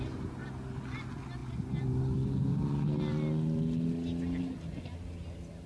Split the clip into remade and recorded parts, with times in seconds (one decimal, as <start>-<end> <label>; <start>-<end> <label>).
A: 0.0-5.7 recorded